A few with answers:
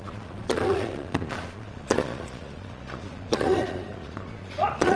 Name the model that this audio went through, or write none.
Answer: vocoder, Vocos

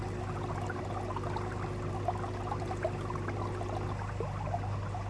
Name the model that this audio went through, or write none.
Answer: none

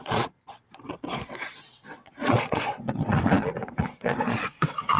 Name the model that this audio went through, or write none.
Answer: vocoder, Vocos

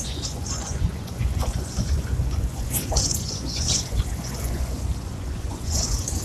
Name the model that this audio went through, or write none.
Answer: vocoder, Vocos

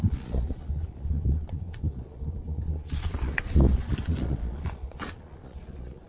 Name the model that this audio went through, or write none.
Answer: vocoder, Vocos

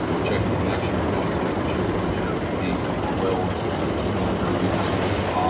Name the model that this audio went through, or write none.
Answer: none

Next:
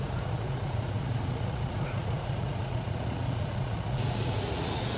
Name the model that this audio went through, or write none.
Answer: vocoder, Vocos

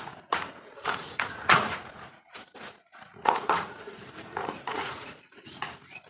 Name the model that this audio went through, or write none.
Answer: vocoder, Vocos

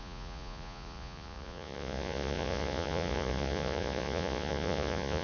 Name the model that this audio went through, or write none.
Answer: vocoder, Vocos